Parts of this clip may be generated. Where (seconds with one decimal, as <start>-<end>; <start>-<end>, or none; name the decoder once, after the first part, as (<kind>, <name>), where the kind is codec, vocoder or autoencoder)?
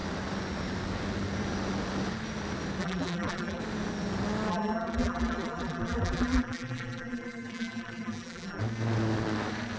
2.8-3.6 (vocoder, BigVGAN v2); 4.5-8.6